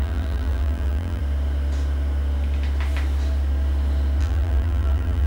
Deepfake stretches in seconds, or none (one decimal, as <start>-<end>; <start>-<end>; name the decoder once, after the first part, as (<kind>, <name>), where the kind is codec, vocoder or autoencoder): 0.0-1.2 (vocoder, BigVGAN v2); 4.2-5.3

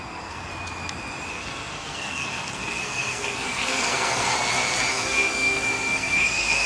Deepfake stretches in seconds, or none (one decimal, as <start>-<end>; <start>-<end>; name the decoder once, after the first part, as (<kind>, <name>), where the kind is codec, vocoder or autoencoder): 0.0-0.5 (codec, SNAC); 1.3-4.3; 4.9-6.7

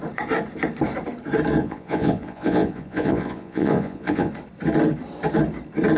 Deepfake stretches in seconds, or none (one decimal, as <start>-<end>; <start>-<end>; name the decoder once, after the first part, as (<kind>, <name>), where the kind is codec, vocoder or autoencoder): 1.6-4.3 (vocoder, Vocos)

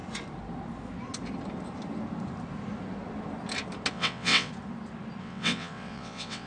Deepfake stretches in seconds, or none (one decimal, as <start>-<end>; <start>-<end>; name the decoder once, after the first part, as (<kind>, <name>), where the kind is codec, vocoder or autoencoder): 3.9-4.5 (vocoder, WaveNeXt); 5.2-6.5

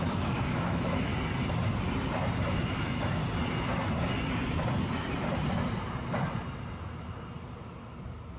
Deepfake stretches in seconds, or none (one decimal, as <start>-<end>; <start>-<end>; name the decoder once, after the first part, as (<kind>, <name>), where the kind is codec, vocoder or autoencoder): 0.0-1.1 (autoencoder, DAC-VAE); 2.4-3.2

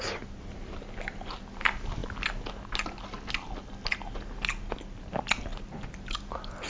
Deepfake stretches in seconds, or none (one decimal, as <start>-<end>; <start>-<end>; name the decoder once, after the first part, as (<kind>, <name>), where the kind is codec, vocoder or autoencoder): none